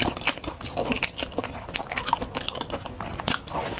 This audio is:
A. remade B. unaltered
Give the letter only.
B